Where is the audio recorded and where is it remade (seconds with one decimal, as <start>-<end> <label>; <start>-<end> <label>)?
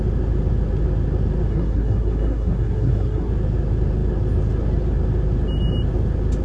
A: 0.0-1.5 recorded; 1.5-3.3 remade; 3.3-6.4 recorded